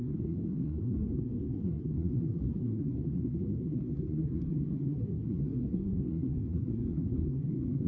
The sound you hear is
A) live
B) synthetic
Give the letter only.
B